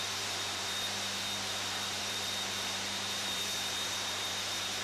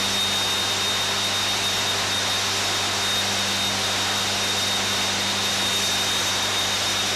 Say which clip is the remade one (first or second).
first